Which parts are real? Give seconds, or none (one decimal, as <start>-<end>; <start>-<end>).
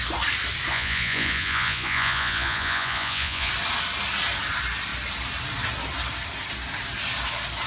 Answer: 0.0-0.7; 3.5-7.7